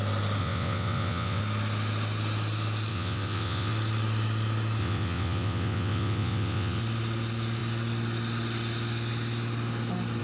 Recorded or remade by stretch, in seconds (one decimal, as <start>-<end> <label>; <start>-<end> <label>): 0.0-0.4 recorded; 0.4-1.4 remade; 1.4-2.9 recorded; 2.9-3.7 remade; 3.7-4.8 recorded; 4.8-6.8 remade; 6.8-10.2 recorded